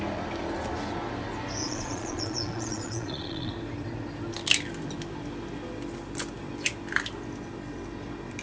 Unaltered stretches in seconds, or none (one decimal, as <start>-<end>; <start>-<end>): 0.0-1.6; 3.5-8.4